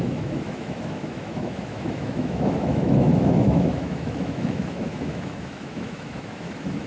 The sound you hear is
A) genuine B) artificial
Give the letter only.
B